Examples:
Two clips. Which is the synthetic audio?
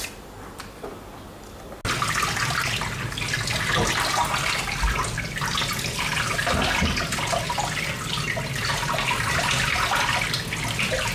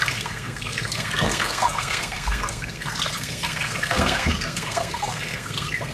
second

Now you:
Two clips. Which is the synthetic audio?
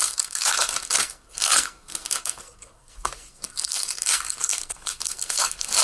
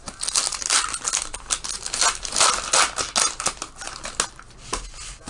first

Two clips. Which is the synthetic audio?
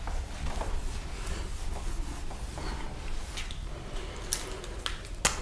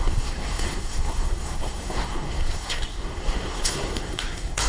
second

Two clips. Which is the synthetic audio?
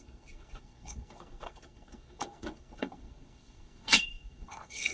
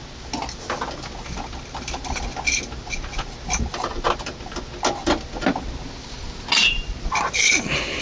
first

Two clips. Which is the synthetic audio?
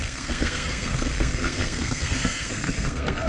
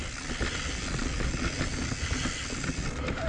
first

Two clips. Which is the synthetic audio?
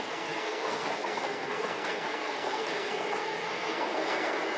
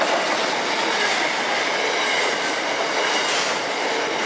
first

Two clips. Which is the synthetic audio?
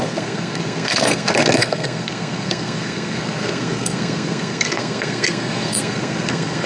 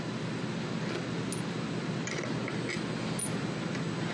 first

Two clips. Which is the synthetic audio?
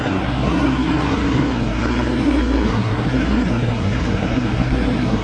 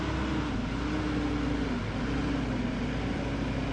first